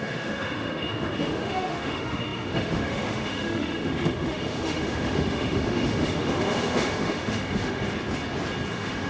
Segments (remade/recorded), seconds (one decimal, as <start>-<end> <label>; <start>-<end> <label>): 0.0-7.8 remade; 7.8-8.7 recorded; 8.7-9.1 remade